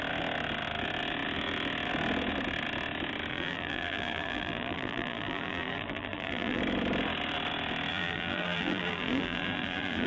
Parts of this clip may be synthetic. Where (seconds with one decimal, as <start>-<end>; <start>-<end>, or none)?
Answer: 3.3-6.6; 7.9-10.1